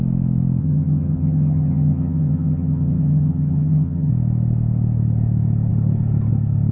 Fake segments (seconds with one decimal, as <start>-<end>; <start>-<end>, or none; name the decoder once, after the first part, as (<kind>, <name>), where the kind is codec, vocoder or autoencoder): 0.6-4.1 (vocoder, HiFi-GAN)